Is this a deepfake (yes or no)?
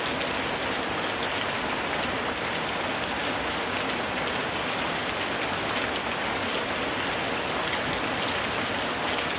no